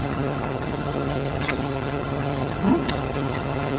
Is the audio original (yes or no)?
no